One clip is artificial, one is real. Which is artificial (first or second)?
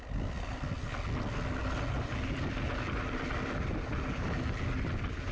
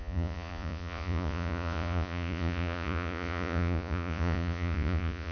second